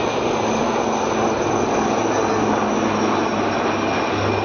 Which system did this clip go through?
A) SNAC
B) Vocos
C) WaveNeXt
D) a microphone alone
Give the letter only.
D